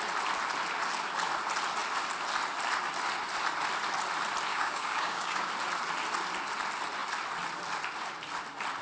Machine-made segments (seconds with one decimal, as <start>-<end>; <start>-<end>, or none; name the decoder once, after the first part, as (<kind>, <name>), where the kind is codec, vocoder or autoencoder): 4.5-5.5 (codec, DAC)